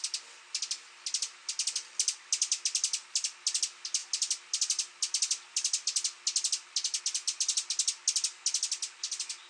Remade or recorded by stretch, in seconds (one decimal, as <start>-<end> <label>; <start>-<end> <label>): 0.0-9.5 recorded